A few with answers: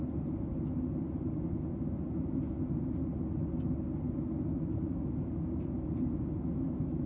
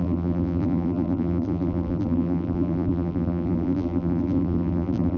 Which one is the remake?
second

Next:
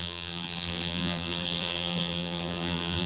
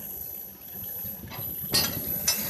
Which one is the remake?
first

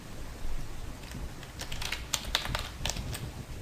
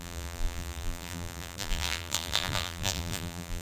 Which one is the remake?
second